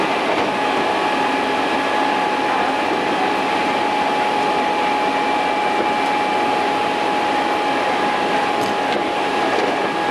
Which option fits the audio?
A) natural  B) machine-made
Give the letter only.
A